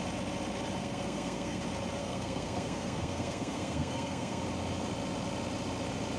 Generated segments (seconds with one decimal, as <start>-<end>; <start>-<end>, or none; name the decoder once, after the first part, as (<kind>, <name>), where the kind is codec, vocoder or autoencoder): 0.8-1.6 (codec, SNAC); 2.0-4.4